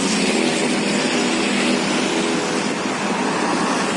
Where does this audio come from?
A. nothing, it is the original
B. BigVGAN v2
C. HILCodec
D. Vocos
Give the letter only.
A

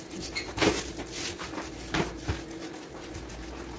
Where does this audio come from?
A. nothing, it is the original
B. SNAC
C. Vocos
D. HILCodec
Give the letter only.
A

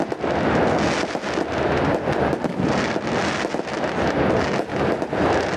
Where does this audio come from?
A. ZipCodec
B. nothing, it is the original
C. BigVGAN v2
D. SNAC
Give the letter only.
B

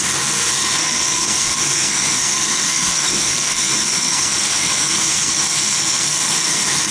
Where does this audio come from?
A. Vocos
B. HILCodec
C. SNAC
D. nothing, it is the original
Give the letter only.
C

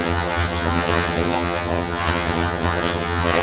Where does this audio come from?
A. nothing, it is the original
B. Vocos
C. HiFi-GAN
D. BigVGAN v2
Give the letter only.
C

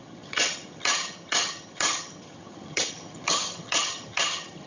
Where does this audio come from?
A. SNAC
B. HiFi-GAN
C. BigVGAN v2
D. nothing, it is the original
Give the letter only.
B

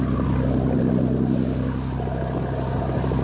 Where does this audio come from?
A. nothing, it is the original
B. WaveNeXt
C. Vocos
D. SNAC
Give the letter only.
A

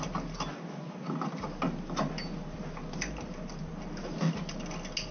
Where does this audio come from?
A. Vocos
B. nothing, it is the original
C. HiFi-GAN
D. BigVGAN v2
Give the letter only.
B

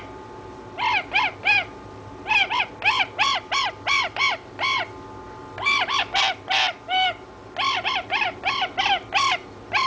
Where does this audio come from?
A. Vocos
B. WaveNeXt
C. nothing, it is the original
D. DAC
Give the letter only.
C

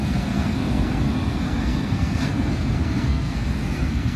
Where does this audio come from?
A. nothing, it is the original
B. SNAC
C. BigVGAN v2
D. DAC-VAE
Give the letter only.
B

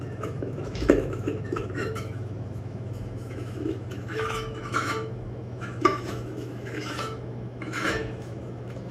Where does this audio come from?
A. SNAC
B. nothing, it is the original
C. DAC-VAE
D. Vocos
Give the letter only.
C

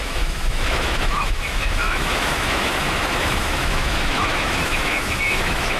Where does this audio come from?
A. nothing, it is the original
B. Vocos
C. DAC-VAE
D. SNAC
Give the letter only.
C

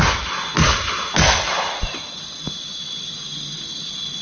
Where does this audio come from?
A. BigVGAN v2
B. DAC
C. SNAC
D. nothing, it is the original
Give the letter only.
D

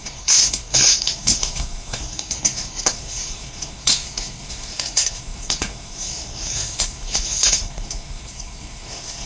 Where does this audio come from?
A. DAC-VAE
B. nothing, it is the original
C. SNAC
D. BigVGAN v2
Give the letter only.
C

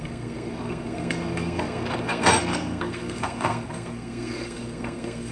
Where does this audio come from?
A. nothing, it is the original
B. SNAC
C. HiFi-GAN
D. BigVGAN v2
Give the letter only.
B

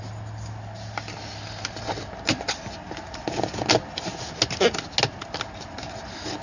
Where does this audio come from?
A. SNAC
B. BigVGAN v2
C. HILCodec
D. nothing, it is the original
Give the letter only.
D